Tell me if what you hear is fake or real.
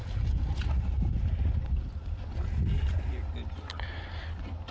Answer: real